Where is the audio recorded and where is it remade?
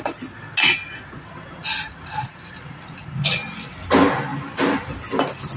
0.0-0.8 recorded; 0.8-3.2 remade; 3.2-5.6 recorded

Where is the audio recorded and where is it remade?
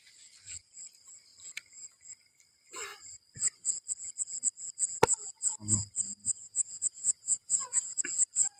0.0-6.2 recorded; 6.2-8.0 remade; 8.0-8.6 recorded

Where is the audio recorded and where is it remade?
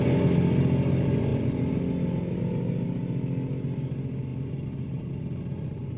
0.0-6.0 recorded